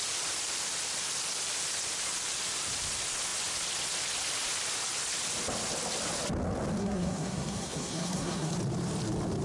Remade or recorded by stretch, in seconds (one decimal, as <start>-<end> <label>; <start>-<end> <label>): 0.0-6.8 recorded; 6.8-8.5 remade; 8.5-9.4 recorded